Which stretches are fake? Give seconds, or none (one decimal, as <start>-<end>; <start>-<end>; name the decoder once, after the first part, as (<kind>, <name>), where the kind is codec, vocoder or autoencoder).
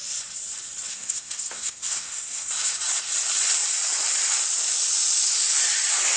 0.9-2.5 (codec, SNAC)